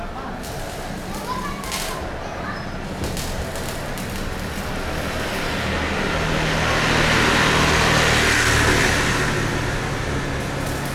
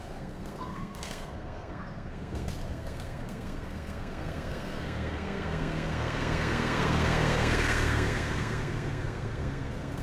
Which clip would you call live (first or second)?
first